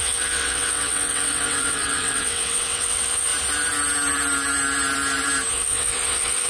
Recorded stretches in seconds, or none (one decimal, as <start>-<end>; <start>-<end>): 3.3-5.5